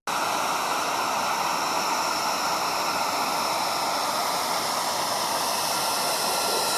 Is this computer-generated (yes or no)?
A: no